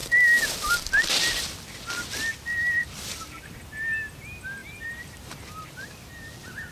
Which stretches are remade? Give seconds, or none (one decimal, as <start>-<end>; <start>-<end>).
2.5-3.3; 4.6-6.7

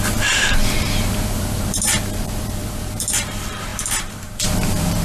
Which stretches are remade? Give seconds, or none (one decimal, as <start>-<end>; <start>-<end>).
0.0-5.0

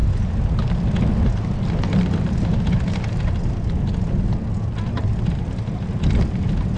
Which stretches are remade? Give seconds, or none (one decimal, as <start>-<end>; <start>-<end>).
none

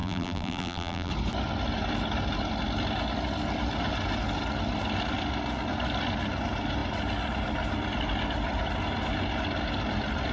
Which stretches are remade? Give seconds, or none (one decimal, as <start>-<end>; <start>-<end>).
0.0-1.1

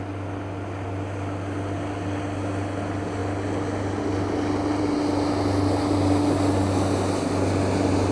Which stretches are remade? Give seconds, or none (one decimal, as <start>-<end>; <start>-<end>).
none

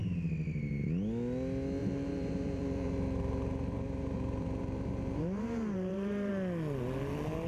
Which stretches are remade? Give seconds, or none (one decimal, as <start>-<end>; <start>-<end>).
1.8-6.3

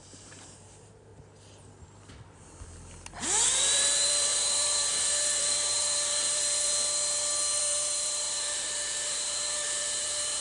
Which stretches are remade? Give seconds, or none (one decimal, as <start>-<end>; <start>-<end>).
0.0-1.1; 3.5-6.7; 7.6-10.4